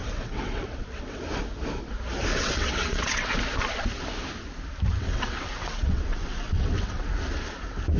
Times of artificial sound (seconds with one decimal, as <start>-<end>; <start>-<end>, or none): 0.0-1.2; 2.3-3.3; 4.9-7.1